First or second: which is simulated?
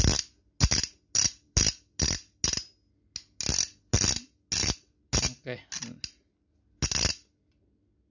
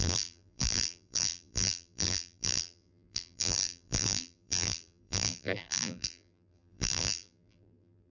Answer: second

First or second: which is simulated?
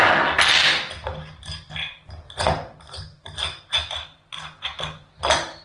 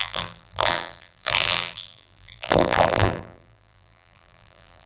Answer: second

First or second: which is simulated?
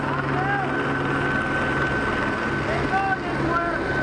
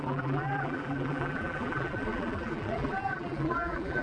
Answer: second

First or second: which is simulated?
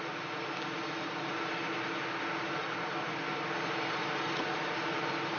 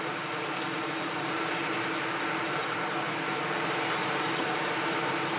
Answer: second